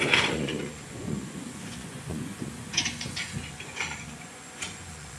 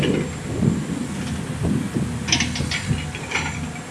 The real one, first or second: second